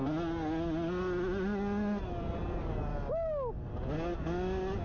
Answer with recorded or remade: recorded